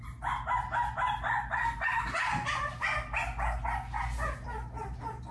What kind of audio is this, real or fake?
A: real